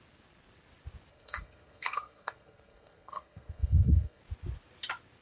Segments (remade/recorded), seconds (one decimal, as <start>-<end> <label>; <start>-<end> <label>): 0.0-1.1 recorded; 1.1-4.2 remade; 4.2-5.2 recorded